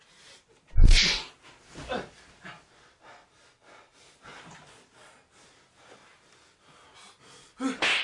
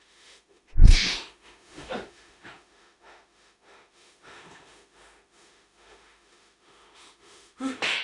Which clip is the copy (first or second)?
second